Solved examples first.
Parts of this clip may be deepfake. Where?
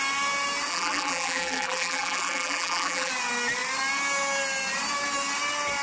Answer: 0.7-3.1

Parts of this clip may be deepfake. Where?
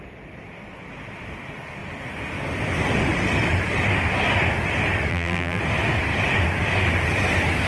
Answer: 5.1-5.6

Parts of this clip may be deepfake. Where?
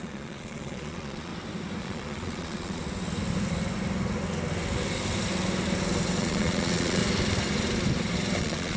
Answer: 0.0-1.3; 1.8-2.8; 6.2-7.0; 8.4-8.8